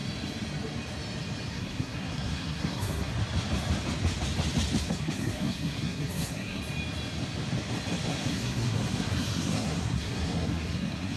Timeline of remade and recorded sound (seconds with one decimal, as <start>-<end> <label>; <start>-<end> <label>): 0.0-1.5 recorded; 1.5-3.1 remade; 3.1-4.8 recorded; 4.8-6.6 remade; 6.6-8.1 recorded; 8.1-11.2 remade